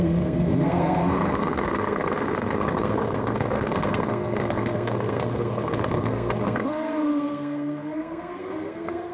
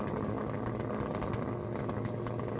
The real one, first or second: second